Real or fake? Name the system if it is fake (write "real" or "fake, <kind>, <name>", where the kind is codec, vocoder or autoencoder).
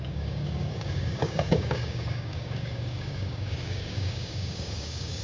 fake, codec, DAC